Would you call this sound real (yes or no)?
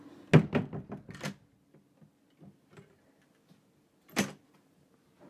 yes